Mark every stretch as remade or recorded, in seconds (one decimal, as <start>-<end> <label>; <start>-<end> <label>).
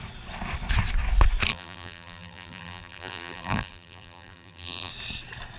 0.0-1.5 recorded; 1.5-4.9 remade; 4.9-5.6 recorded